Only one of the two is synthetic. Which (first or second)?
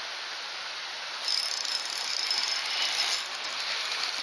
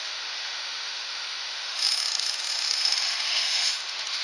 second